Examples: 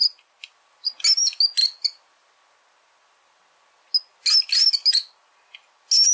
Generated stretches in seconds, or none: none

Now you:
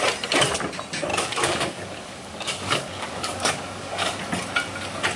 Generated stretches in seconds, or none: 1.1-4.2 (codec, DAC)

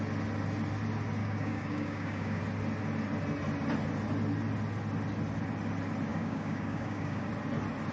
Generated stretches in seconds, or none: 1.2-2.4 (codec, DAC); 6.1-7.3

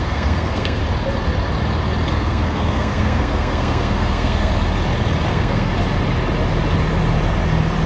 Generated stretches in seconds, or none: 0.0-0.8 (codec, SNAC); 2.1-4.5; 5.3-5.7

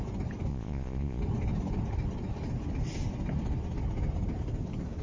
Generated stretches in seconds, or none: 0.5-1.2 (vocoder, Vocos)